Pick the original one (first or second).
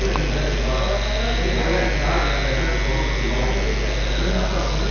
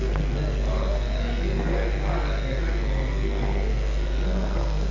first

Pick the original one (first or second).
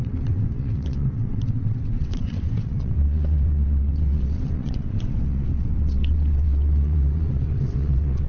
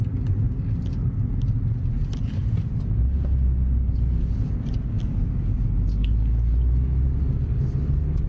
second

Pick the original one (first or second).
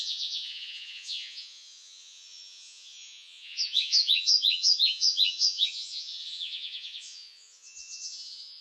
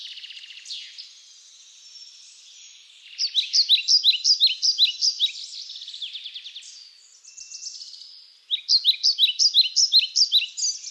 second